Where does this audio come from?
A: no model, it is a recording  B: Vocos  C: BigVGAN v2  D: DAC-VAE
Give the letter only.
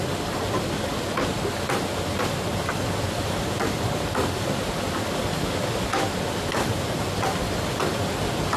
A